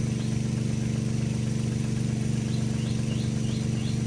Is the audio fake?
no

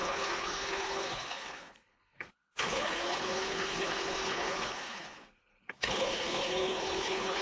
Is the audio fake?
yes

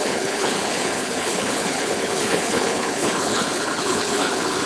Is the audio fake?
yes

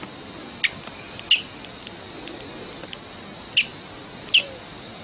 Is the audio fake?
no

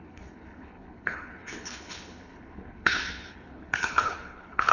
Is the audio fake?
yes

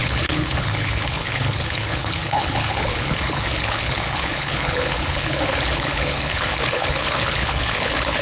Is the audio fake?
yes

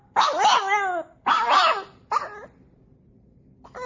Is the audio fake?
no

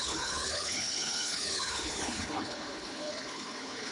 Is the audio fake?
yes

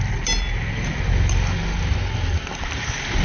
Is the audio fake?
no